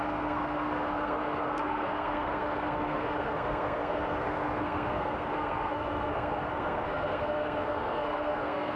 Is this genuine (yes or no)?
no